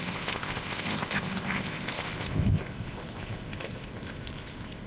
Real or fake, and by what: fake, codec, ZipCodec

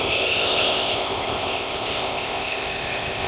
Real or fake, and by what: fake, codec, ZipCodec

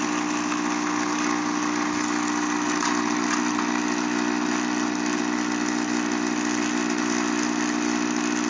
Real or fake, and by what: real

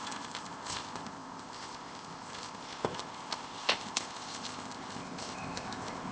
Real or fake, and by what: fake, codec, ZipCodec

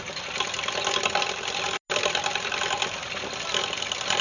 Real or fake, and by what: real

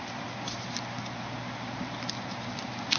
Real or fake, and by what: real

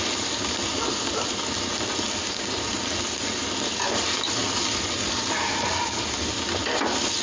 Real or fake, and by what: real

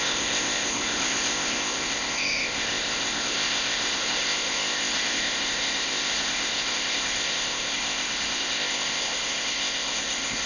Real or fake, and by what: fake, codec, ZipCodec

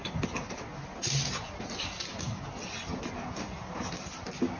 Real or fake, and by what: real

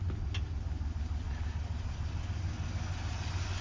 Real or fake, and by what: real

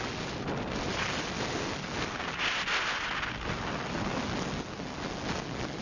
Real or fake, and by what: real